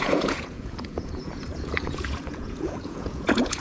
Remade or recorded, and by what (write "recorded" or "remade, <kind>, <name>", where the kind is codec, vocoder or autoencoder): remade, vocoder, Vocos